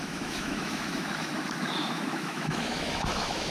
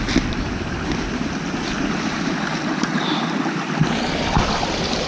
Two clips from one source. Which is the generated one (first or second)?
first